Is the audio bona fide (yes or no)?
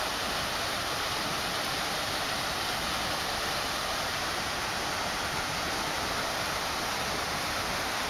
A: yes